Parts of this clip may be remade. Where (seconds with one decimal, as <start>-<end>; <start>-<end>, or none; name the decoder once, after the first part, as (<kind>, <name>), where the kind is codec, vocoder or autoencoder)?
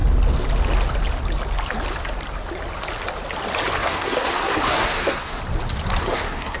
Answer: 3.8-5.4 (codec, SNAC); 6.0-6.6